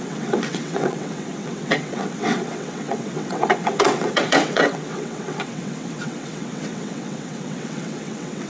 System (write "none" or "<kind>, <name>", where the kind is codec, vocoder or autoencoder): vocoder, WaveNeXt